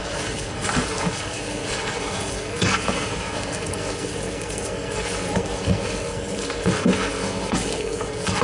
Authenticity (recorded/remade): remade